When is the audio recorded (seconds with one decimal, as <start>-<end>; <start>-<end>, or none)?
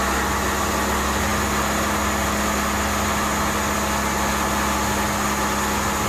0.0-6.1